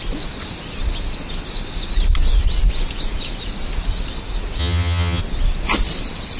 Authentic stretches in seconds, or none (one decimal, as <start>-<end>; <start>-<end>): 0.0-4.6; 5.2-6.4

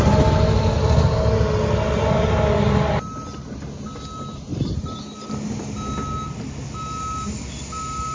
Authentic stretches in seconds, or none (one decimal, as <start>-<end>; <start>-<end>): 0.0-4.5; 5.3-8.1

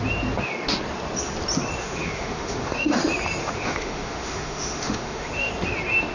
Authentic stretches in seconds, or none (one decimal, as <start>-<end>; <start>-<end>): 0.0-1.8; 3.0-3.4; 5.5-6.1

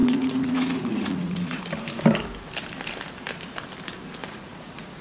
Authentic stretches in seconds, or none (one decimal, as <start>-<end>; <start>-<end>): 1.6-4.2

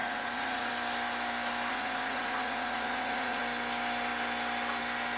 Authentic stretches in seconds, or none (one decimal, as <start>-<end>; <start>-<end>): 0.7-1.7; 3.4-5.2